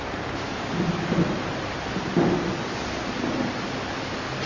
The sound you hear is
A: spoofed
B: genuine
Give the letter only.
B